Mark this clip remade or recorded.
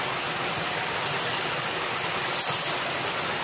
recorded